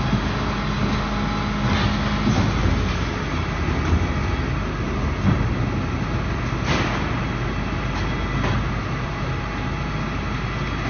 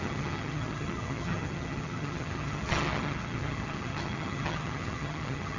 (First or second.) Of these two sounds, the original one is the first